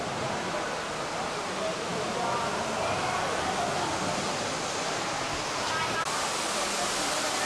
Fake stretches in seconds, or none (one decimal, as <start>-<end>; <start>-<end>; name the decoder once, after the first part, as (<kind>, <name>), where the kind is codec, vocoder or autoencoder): none